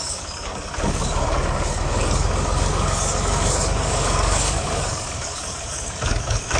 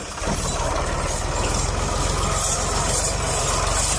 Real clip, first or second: second